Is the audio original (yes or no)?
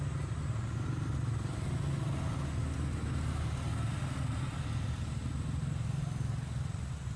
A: yes